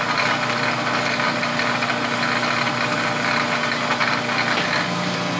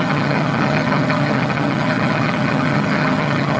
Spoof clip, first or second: second